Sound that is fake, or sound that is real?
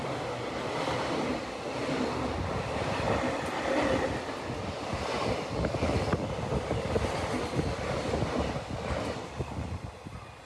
real